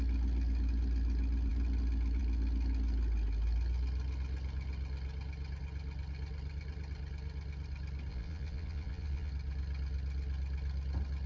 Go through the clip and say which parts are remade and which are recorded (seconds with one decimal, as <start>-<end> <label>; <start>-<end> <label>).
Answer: 0.0-8.1 recorded; 8.1-9.3 remade; 9.3-11.3 recorded

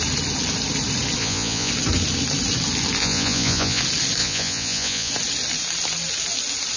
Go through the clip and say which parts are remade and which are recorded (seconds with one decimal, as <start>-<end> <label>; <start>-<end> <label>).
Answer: 0.0-1.2 recorded; 1.2-1.7 remade; 1.7-3.0 recorded; 3.0-3.8 remade; 3.8-4.2 recorded; 4.2-5.1 remade; 5.1-6.8 recorded

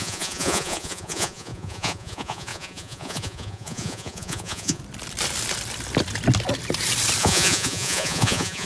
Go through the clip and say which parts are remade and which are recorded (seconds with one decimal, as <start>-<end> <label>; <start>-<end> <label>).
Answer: 0.0-4.8 remade; 4.8-7.2 recorded; 7.2-8.7 remade

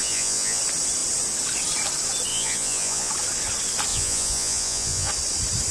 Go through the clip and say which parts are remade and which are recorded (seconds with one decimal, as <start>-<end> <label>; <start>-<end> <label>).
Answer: 0.0-0.6 remade; 0.6-2.3 recorded; 2.3-3.1 remade; 3.1-3.9 recorded; 3.9-5.1 remade; 5.1-5.7 recorded

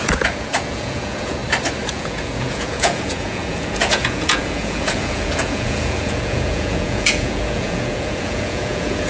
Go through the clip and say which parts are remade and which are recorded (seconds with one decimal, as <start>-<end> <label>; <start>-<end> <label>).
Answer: 0.0-1.4 remade; 1.4-1.9 recorded; 1.9-9.1 remade

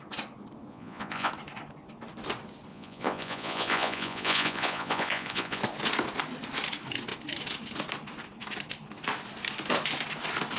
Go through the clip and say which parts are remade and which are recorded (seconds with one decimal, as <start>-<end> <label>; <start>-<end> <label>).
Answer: 0.0-0.7 recorded; 0.7-1.3 remade; 1.3-2.7 recorded; 2.7-5.6 remade; 5.6-10.6 recorded